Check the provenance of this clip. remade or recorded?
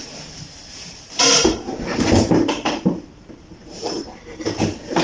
remade